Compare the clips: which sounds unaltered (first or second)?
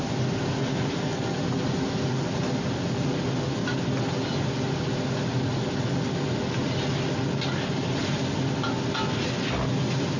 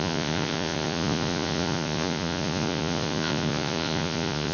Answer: first